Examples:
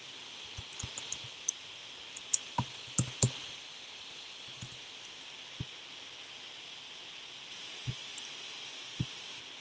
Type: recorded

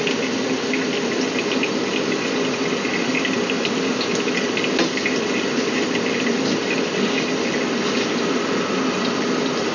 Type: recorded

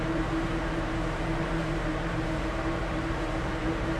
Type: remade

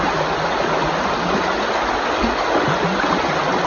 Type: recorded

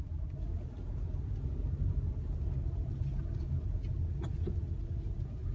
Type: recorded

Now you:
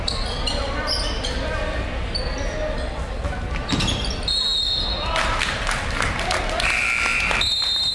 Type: recorded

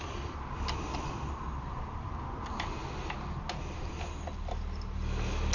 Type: recorded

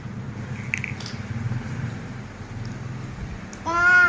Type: recorded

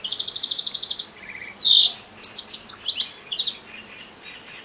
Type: recorded